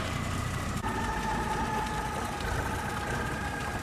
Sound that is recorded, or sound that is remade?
recorded